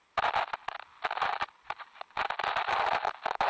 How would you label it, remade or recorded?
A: recorded